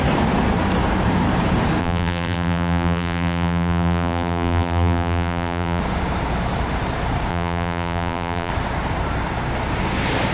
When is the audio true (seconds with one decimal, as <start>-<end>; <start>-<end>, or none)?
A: 0.0-1.8; 5.8-7.3; 8.5-10.3